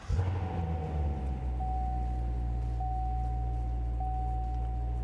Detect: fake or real real